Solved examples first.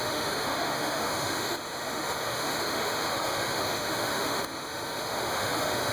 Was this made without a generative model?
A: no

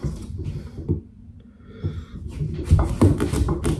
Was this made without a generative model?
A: yes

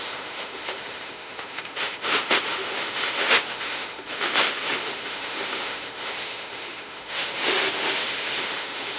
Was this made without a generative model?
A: no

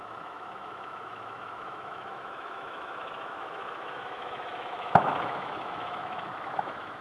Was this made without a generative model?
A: no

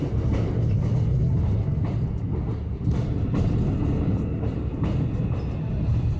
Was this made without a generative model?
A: yes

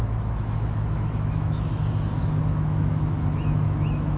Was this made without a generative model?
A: no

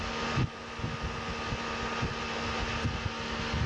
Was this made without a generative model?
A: yes